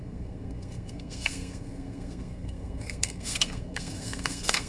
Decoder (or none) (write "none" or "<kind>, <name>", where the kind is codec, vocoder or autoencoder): codec, SNAC